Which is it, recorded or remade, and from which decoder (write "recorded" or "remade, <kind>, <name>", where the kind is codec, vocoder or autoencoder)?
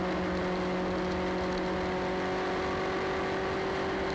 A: recorded